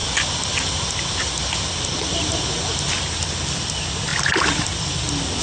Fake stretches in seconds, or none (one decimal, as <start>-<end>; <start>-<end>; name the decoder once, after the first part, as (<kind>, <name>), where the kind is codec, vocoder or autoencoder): none